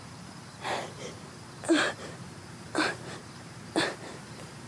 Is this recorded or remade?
remade